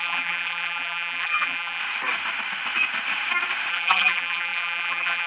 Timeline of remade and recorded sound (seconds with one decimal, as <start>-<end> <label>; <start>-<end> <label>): 0.0-1.8 remade; 1.8-3.7 recorded; 3.7-5.3 remade